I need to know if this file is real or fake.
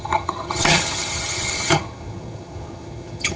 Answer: fake